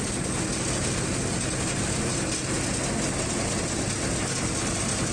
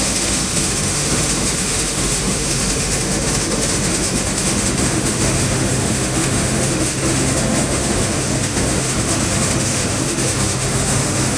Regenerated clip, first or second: second